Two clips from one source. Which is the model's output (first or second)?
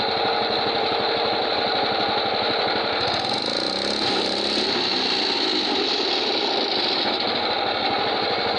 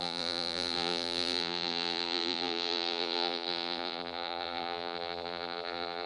second